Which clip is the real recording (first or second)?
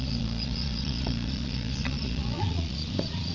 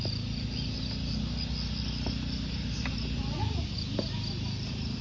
second